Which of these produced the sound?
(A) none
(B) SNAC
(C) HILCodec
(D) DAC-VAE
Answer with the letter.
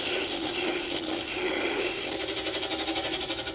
A